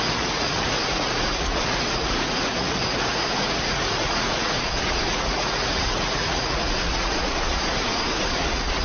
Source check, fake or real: fake